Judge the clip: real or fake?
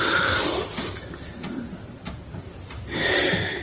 real